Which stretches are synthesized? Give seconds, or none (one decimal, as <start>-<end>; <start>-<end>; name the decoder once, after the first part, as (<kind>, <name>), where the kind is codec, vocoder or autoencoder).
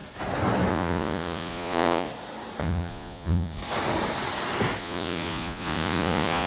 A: 0.7-2.1 (vocoder, Vocos); 2.6-3.6; 4.8-6.5